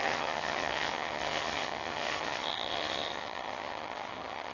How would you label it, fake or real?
fake